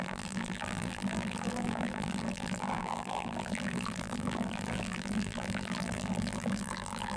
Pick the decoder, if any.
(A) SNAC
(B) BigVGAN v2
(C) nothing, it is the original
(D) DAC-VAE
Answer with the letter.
B